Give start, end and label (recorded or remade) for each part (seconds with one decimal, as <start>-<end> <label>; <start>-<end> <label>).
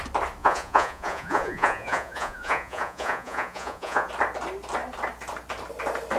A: 0.0-0.4 recorded; 0.4-4.1 remade; 4.1-6.2 recorded